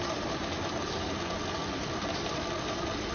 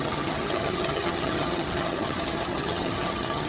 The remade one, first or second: second